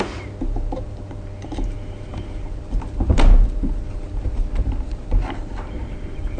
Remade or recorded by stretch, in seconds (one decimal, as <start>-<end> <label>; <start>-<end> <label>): 0.0-6.4 remade